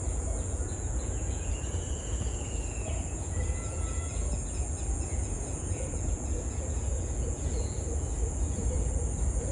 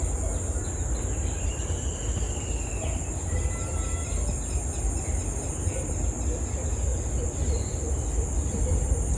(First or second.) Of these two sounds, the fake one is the first